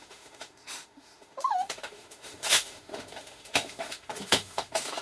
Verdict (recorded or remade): remade